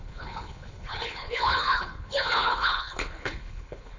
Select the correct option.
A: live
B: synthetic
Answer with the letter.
B